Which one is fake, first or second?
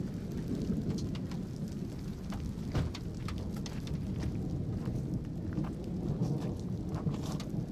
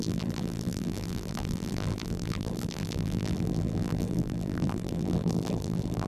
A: second